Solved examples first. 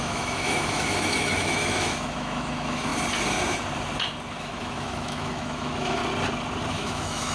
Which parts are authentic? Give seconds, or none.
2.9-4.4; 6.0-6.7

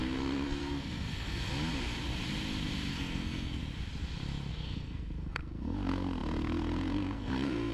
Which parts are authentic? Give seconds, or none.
1.5-2.9; 3.6-4.5